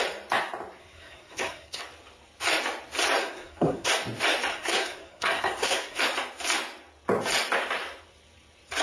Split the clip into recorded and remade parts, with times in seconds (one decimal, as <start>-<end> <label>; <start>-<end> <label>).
0.0-0.8 recorded; 0.8-1.8 remade; 1.8-3.2 recorded; 3.2-3.9 remade; 3.9-4.5 recorded; 4.5-6.0 remade; 6.0-8.8 recorded